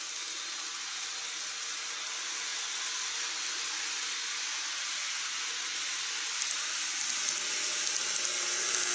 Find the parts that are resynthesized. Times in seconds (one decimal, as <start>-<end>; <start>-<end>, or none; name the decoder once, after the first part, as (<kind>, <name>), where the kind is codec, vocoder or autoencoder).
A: none